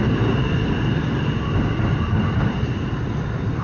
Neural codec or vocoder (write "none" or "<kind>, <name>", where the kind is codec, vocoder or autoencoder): none